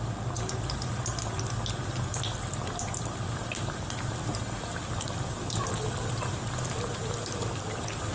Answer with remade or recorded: recorded